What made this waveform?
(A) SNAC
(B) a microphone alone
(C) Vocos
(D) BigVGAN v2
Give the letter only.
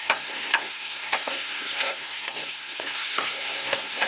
A